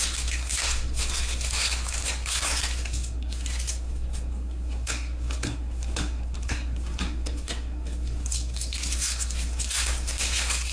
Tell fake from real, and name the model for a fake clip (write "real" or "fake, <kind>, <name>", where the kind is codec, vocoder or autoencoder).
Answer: fake, codec, SNAC